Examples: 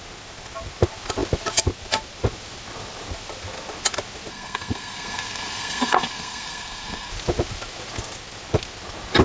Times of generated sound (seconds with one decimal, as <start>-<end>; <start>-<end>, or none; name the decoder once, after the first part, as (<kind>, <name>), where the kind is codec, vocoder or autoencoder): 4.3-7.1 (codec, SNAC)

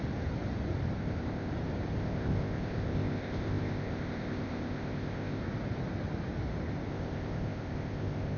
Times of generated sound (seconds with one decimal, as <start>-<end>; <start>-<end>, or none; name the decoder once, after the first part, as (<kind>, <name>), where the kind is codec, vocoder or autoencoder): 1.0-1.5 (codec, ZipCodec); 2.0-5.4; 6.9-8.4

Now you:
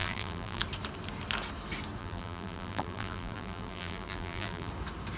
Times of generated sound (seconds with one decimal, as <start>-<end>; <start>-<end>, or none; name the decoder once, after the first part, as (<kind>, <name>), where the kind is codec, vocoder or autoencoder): 0.0-0.6 (vocoder, BigVGAN v2); 2.0-4.7

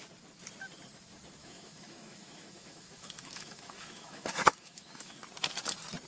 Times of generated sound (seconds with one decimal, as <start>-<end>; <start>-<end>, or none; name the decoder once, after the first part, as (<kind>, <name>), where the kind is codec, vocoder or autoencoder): 1.4-5.1 (autoencoder, DAC-VAE)

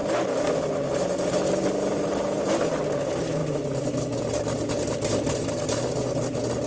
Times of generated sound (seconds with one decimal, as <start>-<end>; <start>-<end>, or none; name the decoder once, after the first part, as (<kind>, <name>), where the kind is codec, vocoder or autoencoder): none

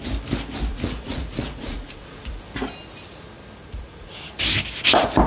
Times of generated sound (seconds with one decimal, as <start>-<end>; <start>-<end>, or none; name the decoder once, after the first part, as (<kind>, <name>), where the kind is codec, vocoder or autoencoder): 0.7-2.4 (vocoder, Vocos); 3.6-4.1

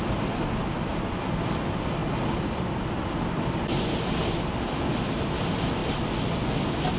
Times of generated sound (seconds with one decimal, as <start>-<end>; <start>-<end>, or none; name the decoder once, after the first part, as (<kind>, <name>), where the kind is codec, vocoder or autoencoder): 0.9-1.6 (vocoder, BigVGAN v2)